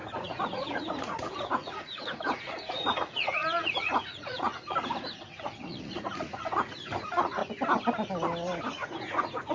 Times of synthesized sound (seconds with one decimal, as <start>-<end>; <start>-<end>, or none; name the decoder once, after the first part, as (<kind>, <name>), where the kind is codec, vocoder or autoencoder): 0.0-7.4 (vocoder, Vocos); 8.6-9.5